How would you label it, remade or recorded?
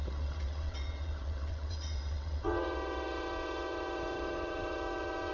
remade